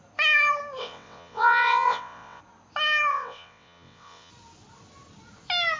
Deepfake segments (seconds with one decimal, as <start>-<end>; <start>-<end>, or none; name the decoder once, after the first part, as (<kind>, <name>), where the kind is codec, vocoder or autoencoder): 0.8-2.4 (vocoder, WaveNeXt); 3.1-4.3